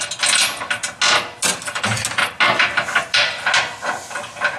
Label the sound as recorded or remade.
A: recorded